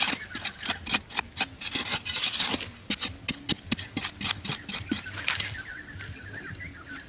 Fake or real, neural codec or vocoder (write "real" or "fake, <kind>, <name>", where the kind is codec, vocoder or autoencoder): real